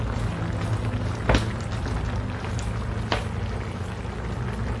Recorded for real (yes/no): yes